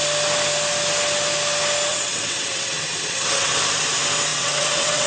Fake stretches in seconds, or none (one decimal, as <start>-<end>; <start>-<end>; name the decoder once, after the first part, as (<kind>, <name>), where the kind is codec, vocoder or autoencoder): 1.9-3.6 (vocoder, WaveNeXt); 4.3-5.1